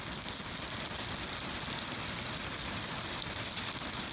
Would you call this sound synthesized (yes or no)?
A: no